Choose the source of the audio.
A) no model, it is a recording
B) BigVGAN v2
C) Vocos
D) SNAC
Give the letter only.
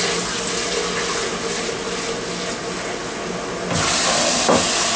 A